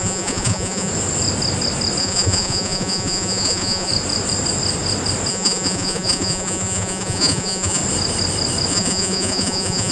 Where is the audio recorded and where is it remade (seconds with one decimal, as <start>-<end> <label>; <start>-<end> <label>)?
0.0-0.9 remade; 0.9-2.0 recorded; 2.0-3.9 remade; 3.9-5.3 recorded; 5.3-7.8 remade; 7.8-8.7 recorded; 8.7-9.9 remade

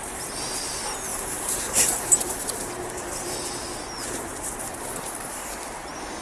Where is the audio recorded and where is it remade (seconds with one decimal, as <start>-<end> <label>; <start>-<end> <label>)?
0.0-1.1 recorded; 1.1-4.7 remade; 4.7-6.2 recorded